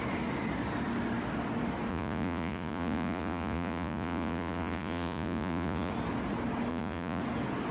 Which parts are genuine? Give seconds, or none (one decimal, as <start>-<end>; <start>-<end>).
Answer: 0.0-1.9; 5.9-6.7; 7.2-7.7